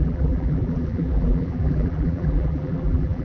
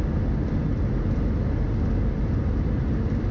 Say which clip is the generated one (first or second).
first